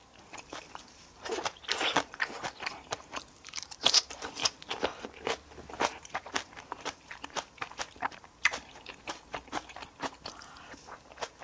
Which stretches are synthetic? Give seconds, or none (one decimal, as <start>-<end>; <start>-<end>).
0.9-1.6; 2.6-4.4; 5.7-11.4